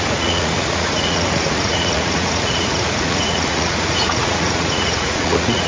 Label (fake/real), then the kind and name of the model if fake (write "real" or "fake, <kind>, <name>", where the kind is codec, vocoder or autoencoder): fake, vocoder, Vocos